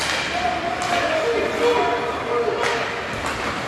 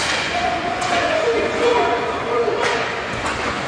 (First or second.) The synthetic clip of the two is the second